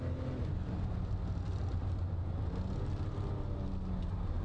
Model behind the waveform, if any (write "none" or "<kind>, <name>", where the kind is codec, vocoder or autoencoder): none